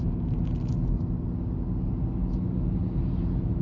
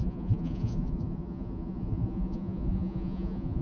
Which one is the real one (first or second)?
first